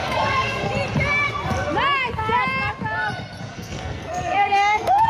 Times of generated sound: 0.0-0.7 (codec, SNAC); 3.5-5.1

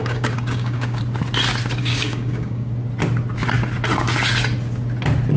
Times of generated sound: 0.0-1.0 (codec, DAC); 1.8-2.7

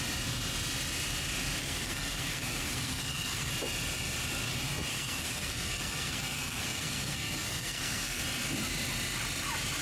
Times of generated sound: 1.6-3.5 (codec, SNAC); 4.9-8.2

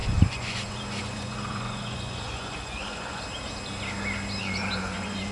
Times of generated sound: 0.0-3.2 (vocoder, Vocos); 4.4-5.3

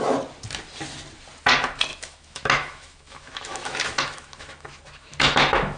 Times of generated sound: 1.9-5.8 (autoencoder, DAC-VAE)